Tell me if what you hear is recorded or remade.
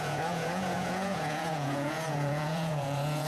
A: remade